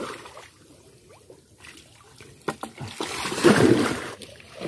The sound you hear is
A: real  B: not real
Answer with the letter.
A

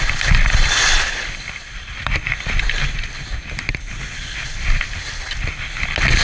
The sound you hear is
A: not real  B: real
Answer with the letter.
B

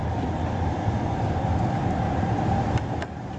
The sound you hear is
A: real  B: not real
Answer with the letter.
B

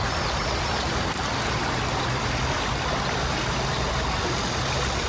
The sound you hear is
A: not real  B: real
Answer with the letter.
B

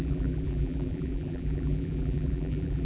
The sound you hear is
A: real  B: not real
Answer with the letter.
B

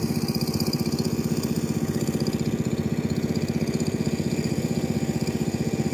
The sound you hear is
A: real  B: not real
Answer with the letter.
B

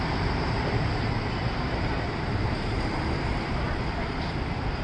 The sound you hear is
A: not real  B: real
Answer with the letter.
A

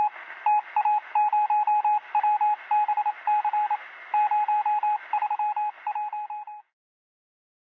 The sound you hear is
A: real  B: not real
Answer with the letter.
A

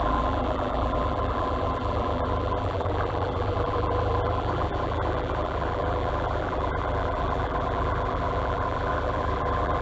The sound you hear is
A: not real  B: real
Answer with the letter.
A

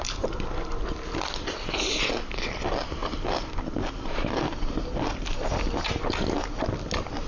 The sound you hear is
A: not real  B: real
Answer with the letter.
B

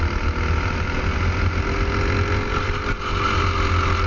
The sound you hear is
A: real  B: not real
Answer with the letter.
A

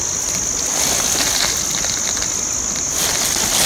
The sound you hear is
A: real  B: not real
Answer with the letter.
A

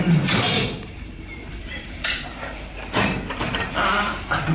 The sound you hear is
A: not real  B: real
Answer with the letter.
A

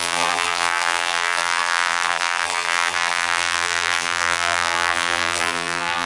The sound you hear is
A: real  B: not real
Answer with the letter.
B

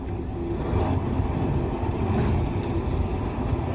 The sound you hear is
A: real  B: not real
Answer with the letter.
A